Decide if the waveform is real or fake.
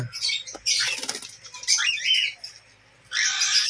real